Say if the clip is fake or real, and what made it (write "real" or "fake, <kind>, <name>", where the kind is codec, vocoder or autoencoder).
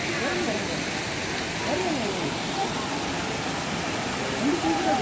real